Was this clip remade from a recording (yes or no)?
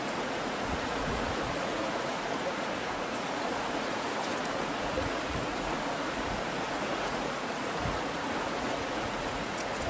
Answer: yes